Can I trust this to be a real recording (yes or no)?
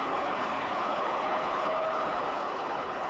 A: no